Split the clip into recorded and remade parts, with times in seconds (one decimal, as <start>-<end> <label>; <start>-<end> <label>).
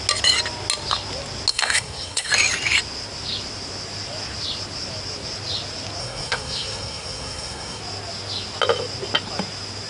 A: 0.0-1.5 recorded; 1.5-2.3 remade; 2.3-6.0 recorded; 6.0-7.8 remade; 7.8-9.9 recorded